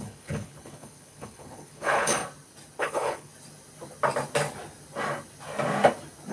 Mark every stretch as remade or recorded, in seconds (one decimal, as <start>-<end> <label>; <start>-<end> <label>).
0.0-2.2 remade; 2.2-2.8 recorded; 2.8-3.3 remade; 3.3-6.3 recorded